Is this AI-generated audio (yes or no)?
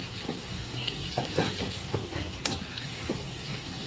yes